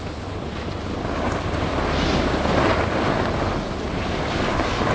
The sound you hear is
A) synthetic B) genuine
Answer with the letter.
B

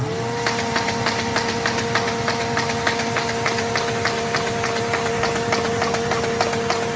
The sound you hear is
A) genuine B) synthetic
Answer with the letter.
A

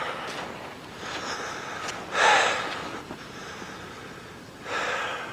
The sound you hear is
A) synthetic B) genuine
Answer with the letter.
B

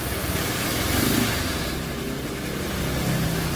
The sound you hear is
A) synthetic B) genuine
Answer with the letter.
B